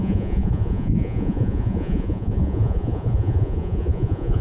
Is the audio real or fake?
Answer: fake